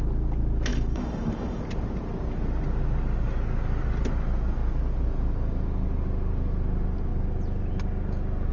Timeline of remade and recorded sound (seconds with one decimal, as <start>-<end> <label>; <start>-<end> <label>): 0.0-0.7 recorded; 0.7-1.6 remade; 1.6-8.5 recorded